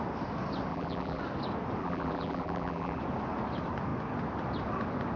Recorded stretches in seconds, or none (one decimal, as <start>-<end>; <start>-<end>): 0.0-0.7; 1.2-1.8; 3.0-5.2